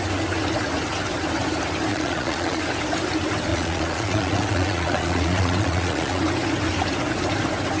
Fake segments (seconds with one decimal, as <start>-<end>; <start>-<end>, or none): 1.9-2.6; 3.5-6.2